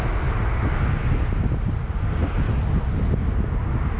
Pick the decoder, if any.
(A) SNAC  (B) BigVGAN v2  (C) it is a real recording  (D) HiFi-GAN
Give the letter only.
C